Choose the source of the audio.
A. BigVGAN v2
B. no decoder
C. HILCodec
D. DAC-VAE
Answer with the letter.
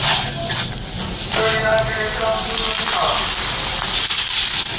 B